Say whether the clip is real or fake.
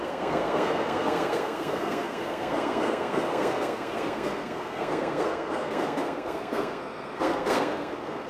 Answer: fake